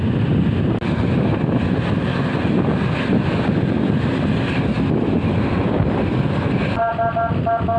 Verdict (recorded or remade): recorded